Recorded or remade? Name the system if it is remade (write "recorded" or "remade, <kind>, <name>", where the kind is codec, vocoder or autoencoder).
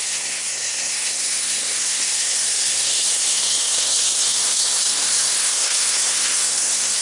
remade, codec, SNAC